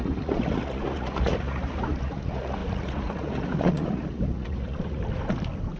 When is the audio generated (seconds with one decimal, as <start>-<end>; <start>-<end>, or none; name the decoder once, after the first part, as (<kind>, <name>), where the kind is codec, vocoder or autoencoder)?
0.0-5.0 (vocoder, Vocos)